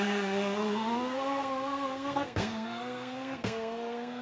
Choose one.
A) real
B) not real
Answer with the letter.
B